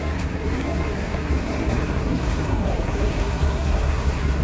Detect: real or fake fake